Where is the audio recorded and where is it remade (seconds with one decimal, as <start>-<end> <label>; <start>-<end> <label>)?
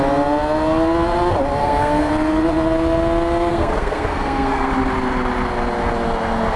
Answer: 0.0-1.6 recorded; 1.6-2.1 remade; 2.1-3.5 recorded; 3.5-4.7 remade; 4.7-6.6 recorded